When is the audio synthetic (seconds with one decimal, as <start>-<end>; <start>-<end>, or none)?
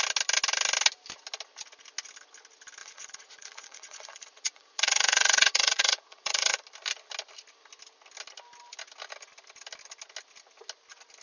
2.8-6.6